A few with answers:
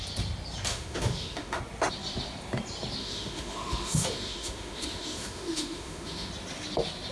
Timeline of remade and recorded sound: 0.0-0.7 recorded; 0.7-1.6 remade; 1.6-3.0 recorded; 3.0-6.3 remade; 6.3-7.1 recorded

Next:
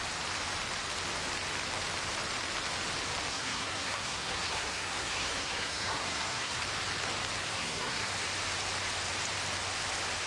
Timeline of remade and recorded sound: 0.0-3.3 recorded; 3.3-6.6 remade; 6.6-7.4 recorded; 7.4-8.1 remade; 8.1-10.3 recorded